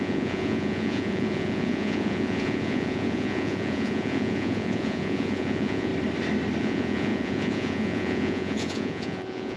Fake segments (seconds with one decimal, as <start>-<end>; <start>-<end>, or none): 0.0-5.9; 6.6-9.6